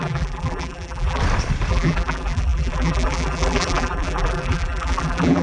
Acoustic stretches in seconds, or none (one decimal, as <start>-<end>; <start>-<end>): 1.2-1.7